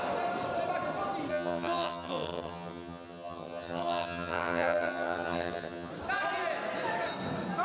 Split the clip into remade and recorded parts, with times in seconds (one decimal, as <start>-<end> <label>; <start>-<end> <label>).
0.0-1.3 recorded; 1.3-5.9 remade; 5.9-7.6 recorded